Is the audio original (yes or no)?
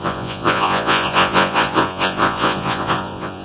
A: no